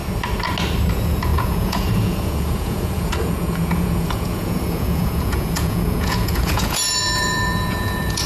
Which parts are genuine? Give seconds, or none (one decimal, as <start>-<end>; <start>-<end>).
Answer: 0.0-0.9